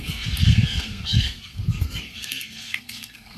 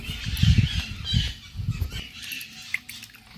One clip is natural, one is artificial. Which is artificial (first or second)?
first